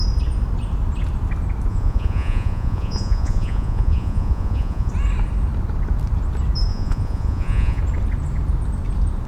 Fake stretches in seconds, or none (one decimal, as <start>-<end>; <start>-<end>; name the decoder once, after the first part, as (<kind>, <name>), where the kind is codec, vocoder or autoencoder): 1.7-4.9 (vocoder, Vocos); 6.7-7.8